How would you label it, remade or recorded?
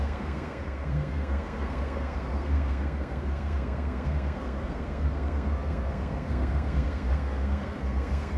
remade